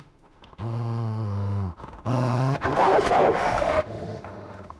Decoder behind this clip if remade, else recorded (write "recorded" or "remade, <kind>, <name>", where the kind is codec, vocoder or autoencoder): remade, autoencoder, DAC-VAE